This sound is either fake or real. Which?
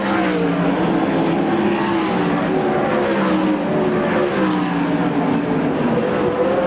real